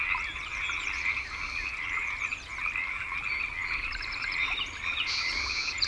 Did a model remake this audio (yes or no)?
no